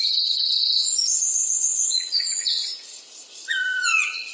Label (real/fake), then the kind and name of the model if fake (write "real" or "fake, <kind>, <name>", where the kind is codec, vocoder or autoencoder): fake, vocoder, Vocos